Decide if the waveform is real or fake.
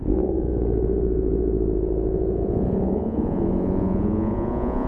fake